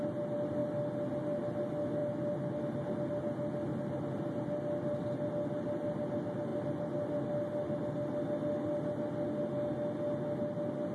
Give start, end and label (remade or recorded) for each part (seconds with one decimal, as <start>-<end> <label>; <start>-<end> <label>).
0.0-10.9 recorded